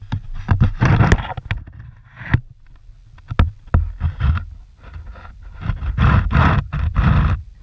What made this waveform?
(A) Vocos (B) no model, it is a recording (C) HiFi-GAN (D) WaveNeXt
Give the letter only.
B